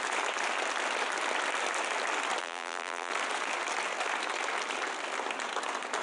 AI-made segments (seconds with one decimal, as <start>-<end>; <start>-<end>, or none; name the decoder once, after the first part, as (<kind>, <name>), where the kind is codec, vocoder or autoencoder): 2.4-3.1 (vocoder, BigVGAN v2)